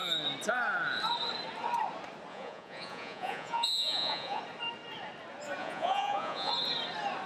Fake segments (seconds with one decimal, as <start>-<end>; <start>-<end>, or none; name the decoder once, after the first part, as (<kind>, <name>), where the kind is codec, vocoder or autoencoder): 2.3-4.4 (vocoder, Vocos); 5.6-6.5